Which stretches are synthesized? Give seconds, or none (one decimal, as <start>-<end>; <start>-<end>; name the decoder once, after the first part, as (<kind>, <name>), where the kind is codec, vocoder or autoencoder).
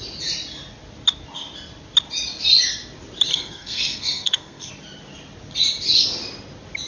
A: 3.3-4.7 (codec, SNAC)